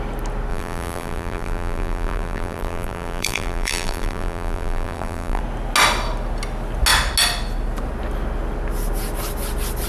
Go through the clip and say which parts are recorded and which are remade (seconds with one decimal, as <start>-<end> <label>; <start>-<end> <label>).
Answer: 0.0-0.5 recorded; 0.5-5.4 remade; 5.4-9.9 recorded